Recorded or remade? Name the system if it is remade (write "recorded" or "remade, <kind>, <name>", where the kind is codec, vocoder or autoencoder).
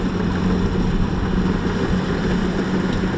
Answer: recorded